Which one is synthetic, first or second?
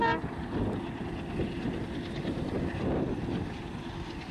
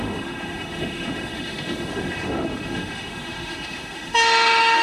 second